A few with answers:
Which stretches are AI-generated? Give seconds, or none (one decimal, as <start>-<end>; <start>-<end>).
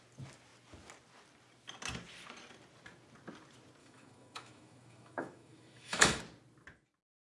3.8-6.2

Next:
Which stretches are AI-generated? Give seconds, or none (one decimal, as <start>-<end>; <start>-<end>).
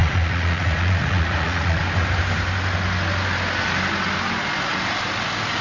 0.0-1.8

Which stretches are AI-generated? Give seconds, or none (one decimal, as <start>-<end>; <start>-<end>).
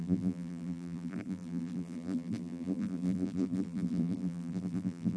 0.0-5.2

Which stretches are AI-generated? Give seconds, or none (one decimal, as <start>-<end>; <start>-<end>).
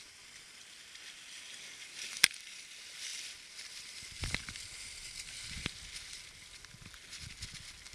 none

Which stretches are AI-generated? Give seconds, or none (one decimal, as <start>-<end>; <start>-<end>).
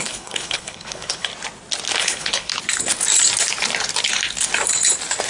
0.0-1.3; 2.0-2.5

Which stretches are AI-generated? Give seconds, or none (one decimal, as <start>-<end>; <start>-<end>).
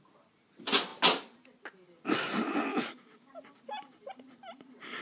2.7-3.3